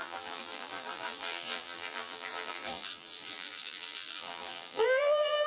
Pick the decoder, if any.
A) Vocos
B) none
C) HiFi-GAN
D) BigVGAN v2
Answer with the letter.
D